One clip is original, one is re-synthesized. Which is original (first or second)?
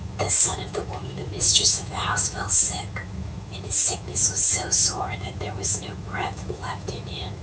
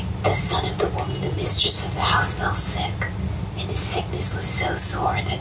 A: second